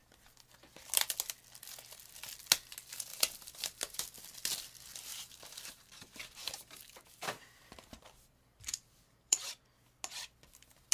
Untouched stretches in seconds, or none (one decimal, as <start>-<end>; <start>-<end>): 0.0-3.1; 4.0-5.1; 9.5-10.9